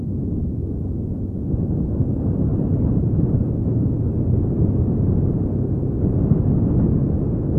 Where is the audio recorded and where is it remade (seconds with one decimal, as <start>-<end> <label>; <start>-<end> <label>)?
0.0-2.5 recorded; 2.5-4.7 remade; 4.7-7.6 recorded